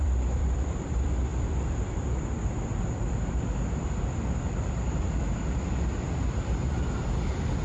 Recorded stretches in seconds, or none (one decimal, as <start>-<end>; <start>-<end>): none